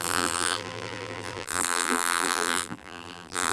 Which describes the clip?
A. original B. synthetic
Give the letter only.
B